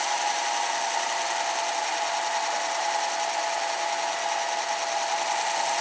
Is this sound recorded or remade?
recorded